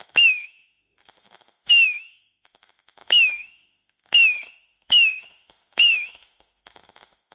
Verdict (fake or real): fake